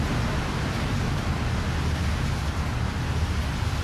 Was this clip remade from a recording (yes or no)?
no